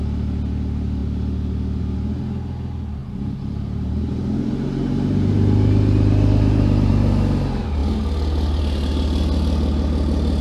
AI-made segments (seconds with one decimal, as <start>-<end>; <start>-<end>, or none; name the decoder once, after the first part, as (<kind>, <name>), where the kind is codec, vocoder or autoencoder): 3.0-6.9 (vocoder, BigVGAN v2)